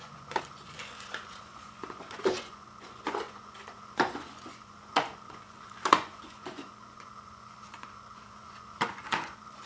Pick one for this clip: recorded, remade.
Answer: remade